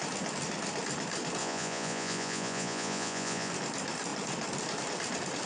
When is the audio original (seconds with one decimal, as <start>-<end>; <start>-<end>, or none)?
0.0-1.4; 3.5-5.5